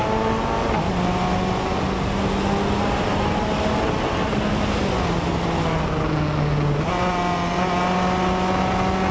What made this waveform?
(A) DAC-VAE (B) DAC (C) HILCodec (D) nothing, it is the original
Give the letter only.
D